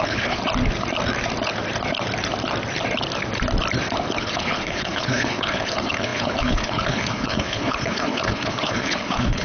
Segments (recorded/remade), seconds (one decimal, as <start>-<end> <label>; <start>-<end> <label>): 0.0-0.4 remade; 0.4-4.2 recorded; 4.2-9.4 remade